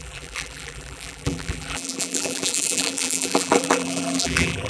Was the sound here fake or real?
fake